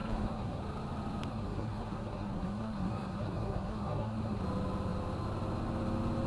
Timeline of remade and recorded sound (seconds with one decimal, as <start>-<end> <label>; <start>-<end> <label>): 0.0-0.6 remade; 0.6-1.3 recorded; 1.3-4.4 remade; 4.4-6.3 recorded